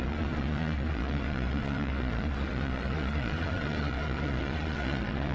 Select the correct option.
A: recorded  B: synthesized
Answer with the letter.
B